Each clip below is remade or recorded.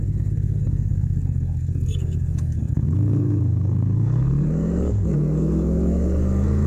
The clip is remade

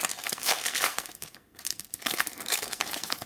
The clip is remade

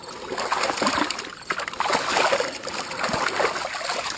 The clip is recorded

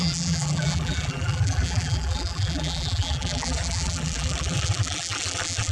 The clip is remade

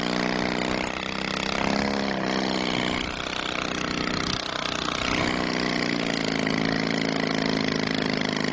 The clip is recorded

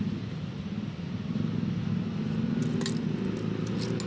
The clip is recorded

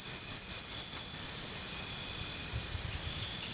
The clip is recorded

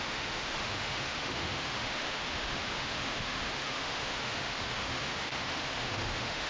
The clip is remade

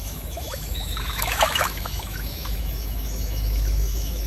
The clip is remade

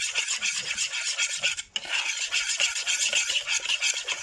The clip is recorded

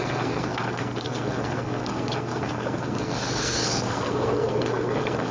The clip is remade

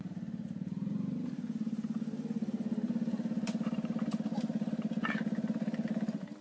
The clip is recorded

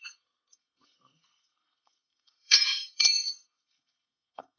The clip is remade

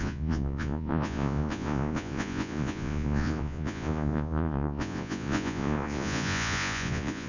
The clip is remade